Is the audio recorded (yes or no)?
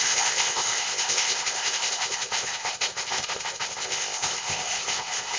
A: no